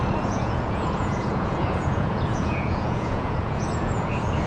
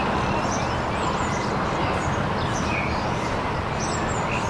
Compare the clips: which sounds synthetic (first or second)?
first